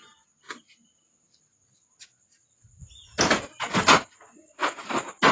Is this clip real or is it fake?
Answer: real